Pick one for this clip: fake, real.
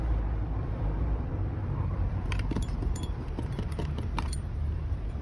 fake